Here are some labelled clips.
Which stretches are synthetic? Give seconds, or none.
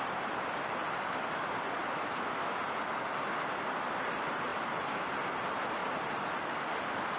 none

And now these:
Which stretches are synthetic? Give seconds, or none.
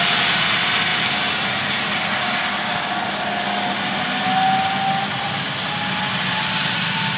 none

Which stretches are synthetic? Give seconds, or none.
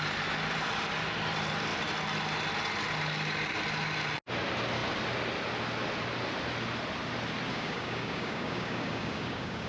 7.5-9.7 (codec, DAC)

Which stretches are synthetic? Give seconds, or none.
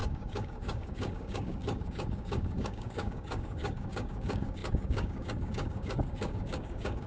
0.0-7.1 (codec, DAC)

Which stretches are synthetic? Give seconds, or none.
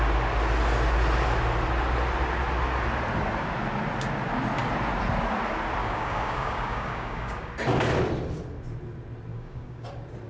5.8-7.5 (codec, DAC); 9.3-9.9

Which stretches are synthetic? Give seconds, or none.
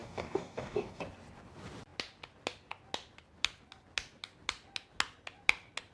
0.0-1.0 (codec, DAC)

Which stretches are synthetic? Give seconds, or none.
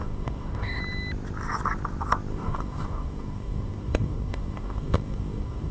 0.0-0.8 (codec, DAC); 2.3-5.7